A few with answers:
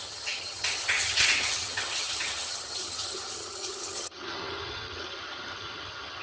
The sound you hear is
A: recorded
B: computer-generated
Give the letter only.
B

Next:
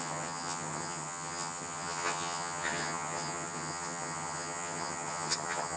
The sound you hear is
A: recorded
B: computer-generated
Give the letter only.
B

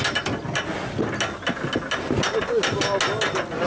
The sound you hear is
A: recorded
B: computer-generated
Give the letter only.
A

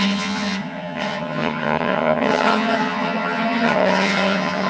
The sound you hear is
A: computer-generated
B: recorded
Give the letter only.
A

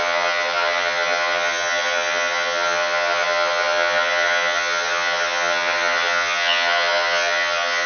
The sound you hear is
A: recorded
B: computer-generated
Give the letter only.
B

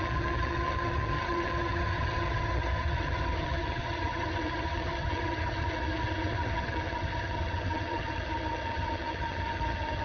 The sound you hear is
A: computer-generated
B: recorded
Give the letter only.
A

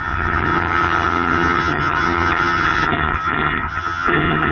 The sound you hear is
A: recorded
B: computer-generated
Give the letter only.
B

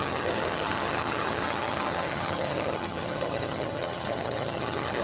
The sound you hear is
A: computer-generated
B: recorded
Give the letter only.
A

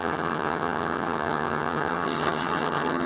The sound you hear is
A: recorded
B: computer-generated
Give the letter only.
B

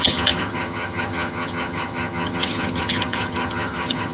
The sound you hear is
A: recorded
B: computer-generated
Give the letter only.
B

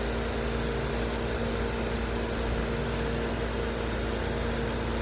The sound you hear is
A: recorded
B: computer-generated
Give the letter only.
A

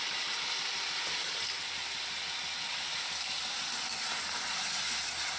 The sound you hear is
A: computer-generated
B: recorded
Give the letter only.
B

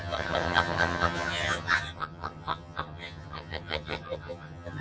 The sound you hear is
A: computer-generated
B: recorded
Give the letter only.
A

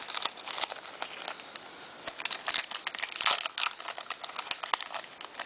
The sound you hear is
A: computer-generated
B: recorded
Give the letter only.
B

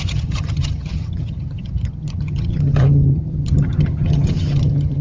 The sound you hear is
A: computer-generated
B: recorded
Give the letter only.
A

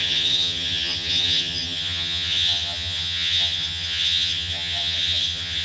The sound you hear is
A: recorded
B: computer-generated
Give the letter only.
B